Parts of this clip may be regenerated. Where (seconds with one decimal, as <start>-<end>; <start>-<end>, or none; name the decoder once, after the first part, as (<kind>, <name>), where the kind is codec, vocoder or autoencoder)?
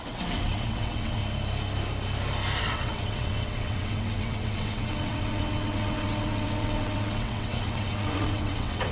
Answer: 0.0-1.2 (vocoder, WaveNeXt); 2.6-8.9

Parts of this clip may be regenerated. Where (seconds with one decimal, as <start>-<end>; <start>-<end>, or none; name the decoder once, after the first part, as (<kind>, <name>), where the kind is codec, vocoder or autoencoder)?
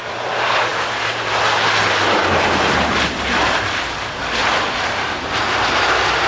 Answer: none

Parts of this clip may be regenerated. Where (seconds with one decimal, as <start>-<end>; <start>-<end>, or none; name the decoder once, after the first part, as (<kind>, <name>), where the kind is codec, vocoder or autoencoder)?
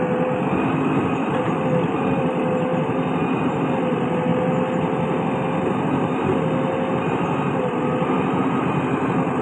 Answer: none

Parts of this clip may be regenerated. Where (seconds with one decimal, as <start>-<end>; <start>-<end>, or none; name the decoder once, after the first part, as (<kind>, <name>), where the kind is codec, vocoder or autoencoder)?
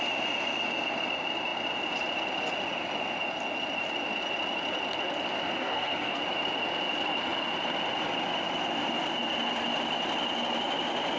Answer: 5.6-6.2 (codec, SNAC)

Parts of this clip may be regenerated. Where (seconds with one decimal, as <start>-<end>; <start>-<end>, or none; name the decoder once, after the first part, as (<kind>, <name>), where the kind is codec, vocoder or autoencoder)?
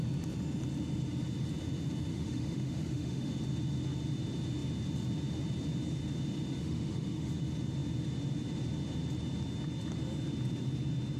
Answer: 2.1-3.3 (autoencoder, DAC-VAE); 6.6-7.3